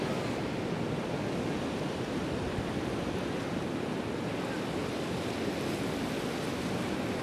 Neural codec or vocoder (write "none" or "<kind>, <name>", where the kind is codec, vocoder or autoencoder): none